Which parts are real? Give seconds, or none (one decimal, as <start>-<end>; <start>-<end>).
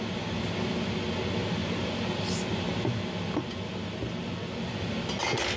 0.0-1.6; 2.2-5.6